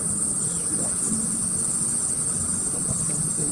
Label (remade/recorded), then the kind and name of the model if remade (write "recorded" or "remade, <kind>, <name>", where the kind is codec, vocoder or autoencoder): recorded